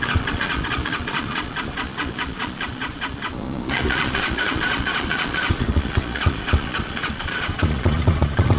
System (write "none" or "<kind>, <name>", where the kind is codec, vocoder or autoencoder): vocoder, Vocos